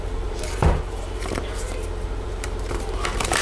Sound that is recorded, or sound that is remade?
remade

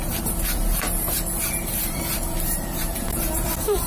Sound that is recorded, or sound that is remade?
remade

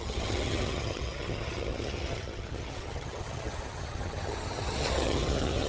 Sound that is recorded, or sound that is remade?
remade